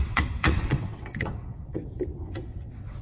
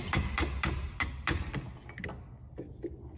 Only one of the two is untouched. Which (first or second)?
second